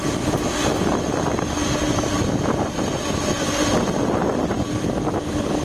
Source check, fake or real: real